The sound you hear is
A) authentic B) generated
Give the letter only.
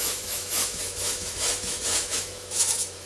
B